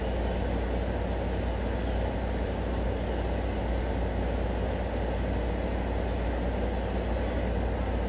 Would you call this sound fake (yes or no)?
no